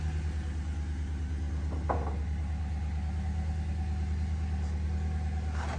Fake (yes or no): no